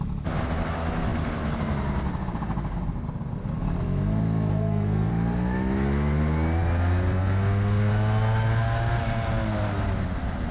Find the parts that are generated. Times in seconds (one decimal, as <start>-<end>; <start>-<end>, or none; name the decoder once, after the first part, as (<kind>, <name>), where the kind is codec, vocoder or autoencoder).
4.5-5.1 (codec, SNAC)